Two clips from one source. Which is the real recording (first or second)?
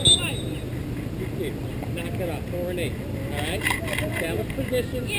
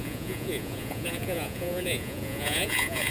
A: first